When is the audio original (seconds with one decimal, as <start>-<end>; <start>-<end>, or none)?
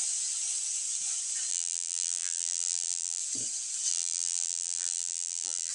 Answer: 0.0-1.5; 3.2-3.9